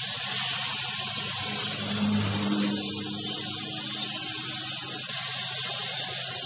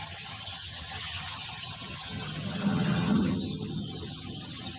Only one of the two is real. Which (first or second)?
first